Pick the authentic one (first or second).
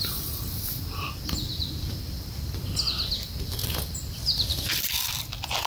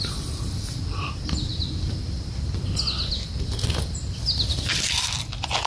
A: second